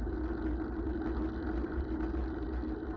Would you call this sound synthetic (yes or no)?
no